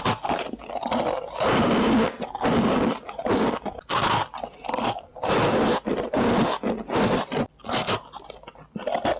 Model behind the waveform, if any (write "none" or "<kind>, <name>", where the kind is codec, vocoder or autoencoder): none